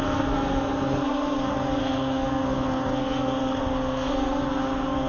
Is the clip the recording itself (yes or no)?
no